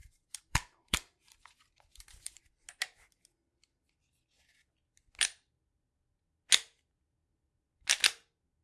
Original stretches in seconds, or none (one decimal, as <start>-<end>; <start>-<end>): 2.4-8.6